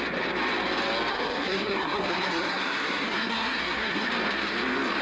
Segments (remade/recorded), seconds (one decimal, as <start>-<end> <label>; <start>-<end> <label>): 0.0-1.1 recorded; 1.1-4.1 remade; 4.1-5.0 recorded